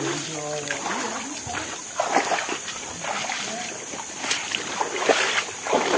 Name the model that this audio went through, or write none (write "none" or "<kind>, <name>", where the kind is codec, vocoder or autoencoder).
none